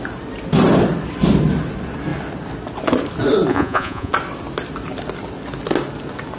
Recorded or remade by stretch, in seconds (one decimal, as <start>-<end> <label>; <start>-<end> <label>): 0.0-3.5 recorded; 3.5-4.1 remade; 4.1-6.4 recorded